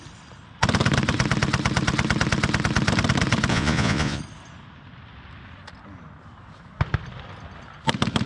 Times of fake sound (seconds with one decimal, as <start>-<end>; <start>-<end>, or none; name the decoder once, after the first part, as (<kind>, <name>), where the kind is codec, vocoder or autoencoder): 3.5-4.2 (vocoder, Vocos)